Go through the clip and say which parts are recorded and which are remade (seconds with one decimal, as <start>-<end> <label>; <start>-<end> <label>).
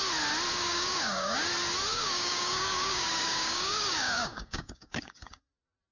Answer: 0.0-0.5 recorded; 0.5-1.5 remade; 1.5-1.9 recorded; 1.9-5.4 remade; 5.4-5.9 recorded